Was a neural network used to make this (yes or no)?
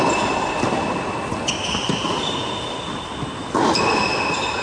no